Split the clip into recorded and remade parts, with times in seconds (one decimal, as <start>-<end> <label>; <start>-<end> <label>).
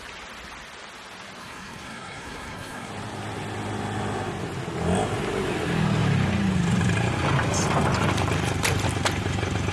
0.0-1.4 recorded; 1.4-2.9 remade; 2.9-9.7 recorded